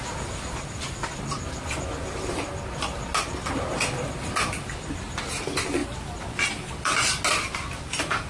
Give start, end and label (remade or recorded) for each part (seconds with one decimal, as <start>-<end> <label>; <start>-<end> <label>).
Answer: 0.0-8.3 recorded